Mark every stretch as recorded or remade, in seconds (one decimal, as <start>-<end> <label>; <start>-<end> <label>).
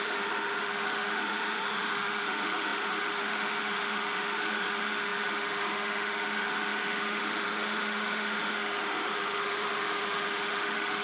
0.0-11.0 remade